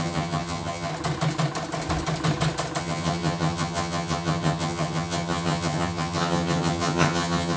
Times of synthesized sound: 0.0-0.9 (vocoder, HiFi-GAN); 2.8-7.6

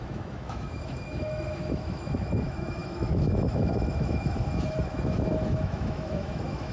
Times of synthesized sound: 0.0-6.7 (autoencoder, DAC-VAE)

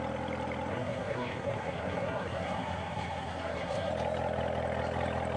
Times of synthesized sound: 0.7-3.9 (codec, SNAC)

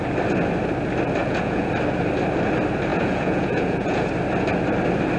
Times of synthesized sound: 1.2-1.7 (vocoder, Vocos); 2.9-4.1

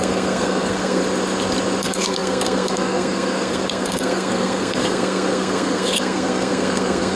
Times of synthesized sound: 0.0-1.0 (codec, SNAC); 1.8-7.2